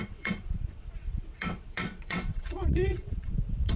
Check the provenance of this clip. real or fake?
fake